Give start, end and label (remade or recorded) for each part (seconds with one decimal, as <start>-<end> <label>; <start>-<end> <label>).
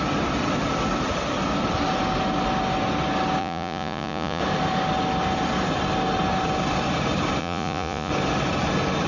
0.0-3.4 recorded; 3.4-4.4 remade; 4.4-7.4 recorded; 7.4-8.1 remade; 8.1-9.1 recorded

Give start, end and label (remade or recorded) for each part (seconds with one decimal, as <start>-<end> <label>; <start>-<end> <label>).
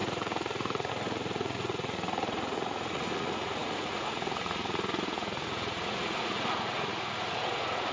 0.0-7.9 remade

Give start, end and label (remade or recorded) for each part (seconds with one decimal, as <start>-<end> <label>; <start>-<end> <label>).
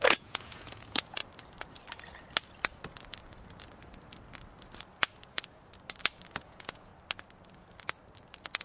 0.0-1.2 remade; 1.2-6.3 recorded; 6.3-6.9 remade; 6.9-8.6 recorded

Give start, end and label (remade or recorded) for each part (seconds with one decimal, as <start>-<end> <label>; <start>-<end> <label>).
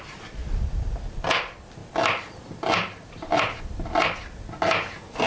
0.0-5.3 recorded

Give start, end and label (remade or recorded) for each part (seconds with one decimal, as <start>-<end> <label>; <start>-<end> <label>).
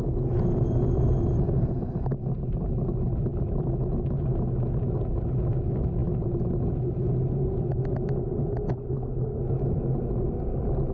0.0-10.9 recorded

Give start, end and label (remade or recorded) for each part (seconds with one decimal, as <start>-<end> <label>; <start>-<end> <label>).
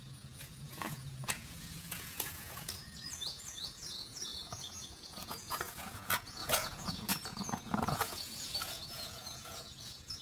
0.0-10.2 remade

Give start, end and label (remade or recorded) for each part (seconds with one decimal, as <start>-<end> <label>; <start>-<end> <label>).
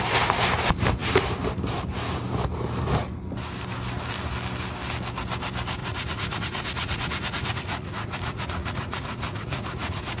0.0-5.8 recorded; 5.8-10.2 remade